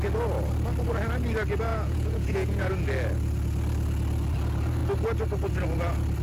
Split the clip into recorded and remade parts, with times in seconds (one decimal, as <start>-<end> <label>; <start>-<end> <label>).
0.0-1.7 recorded; 1.7-2.7 remade; 2.7-6.2 recorded